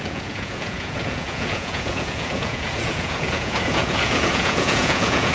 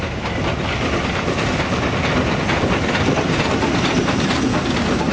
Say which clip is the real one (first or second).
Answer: second